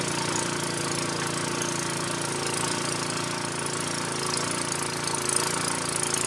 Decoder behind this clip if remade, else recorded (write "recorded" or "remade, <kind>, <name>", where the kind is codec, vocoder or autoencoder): recorded